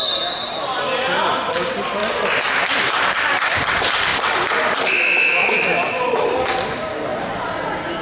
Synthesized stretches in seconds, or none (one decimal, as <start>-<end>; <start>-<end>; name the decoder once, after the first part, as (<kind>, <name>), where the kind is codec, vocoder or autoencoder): 2.0-3.1 (vocoder, BigVGAN v2); 4.1-6.3